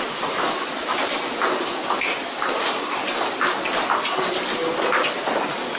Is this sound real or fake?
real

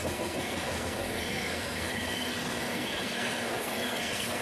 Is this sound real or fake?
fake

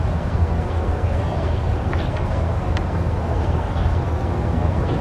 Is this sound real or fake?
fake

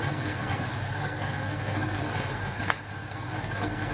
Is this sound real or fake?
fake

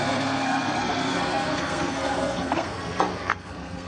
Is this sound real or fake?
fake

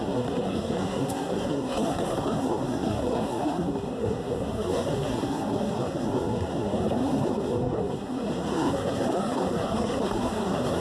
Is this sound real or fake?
fake